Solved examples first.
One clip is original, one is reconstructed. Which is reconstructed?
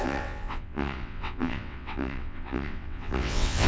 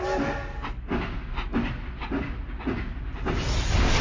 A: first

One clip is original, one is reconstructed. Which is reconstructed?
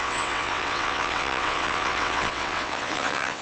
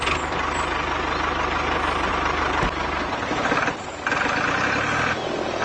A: first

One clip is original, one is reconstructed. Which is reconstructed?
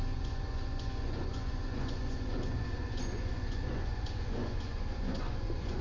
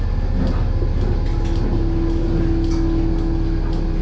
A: first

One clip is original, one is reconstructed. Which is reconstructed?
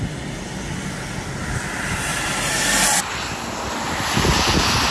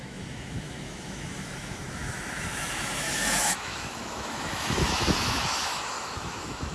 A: second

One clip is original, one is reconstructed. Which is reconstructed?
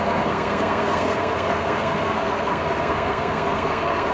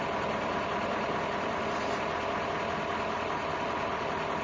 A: first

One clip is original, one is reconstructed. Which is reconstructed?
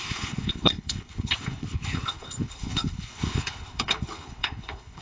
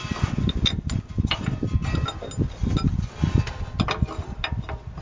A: first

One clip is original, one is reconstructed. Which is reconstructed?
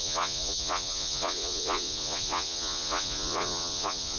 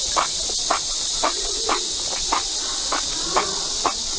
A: first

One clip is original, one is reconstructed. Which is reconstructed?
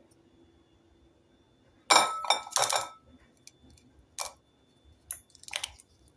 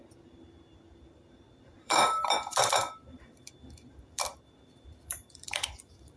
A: second